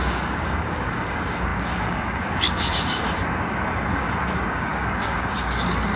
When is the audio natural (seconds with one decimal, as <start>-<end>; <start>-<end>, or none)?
none

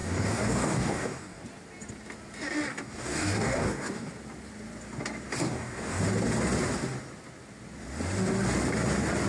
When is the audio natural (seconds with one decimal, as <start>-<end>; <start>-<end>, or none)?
1.4-2.7; 4.1-5.4; 6.0-9.3

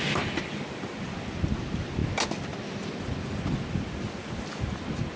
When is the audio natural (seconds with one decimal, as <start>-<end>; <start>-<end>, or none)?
0.0-5.2

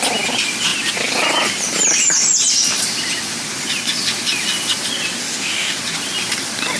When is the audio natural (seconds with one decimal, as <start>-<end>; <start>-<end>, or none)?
0.0-5.2; 5.8-6.8

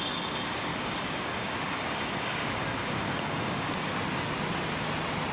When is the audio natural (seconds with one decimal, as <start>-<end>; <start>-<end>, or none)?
0.0-0.7; 3.9-5.3

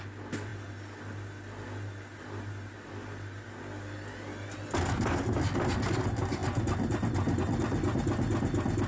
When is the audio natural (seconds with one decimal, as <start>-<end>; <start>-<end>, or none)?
0.0-8.9